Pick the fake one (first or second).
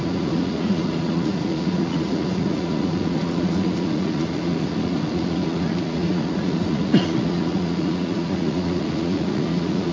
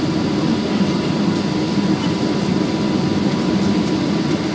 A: first